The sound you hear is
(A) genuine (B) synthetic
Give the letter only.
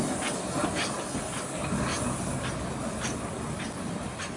A